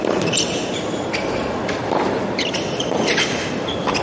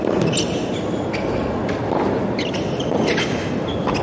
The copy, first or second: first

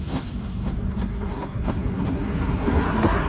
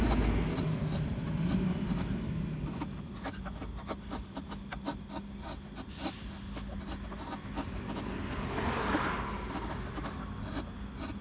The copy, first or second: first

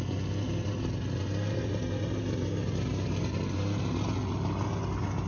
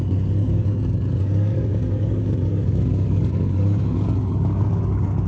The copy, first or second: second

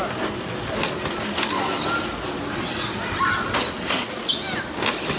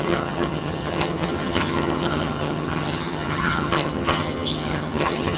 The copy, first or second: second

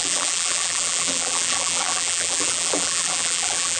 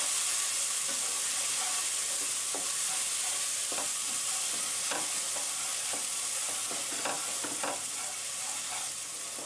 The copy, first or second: first